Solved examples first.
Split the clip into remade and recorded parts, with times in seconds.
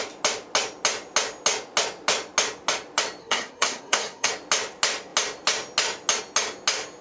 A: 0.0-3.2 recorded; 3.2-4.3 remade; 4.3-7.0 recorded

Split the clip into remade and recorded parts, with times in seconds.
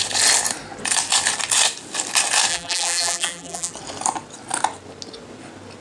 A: 0.0-2.5 recorded; 2.5-3.7 remade; 3.7-5.8 recorded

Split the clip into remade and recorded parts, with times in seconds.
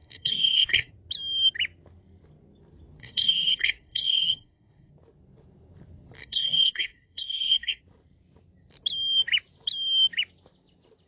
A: 0.0-0.9 remade; 0.9-3.0 recorded; 3.0-4.9 remade; 4.9-6.2 recorded; 6.2-7.8 remade; 7.8-11.1 recorded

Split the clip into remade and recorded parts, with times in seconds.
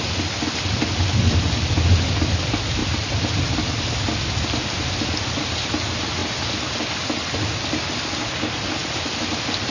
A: 0.0-9.7 recorded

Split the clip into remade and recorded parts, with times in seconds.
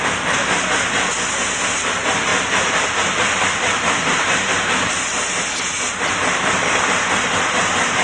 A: 0.0-2.3 recorded; 2.3-4.5 remade; 4.5-8.0 recorded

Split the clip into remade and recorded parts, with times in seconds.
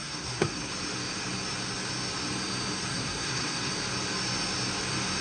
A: 0.0-0.7 remade; 0.7-2.9 recorded; 2.9-3.7 remade; 3.7-5.2 recorded